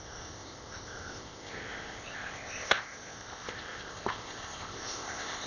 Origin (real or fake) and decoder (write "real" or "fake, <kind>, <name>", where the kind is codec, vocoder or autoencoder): fake, codec, ZipCodec